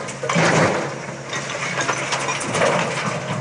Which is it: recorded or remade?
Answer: recorded